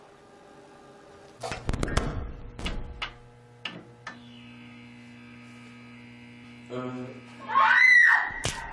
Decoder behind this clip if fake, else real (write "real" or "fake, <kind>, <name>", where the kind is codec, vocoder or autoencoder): real